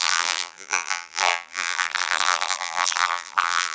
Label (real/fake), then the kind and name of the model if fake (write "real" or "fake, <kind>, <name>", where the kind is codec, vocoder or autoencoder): fake, vocoder, BigVGAN v2